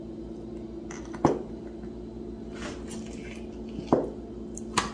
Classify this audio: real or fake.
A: real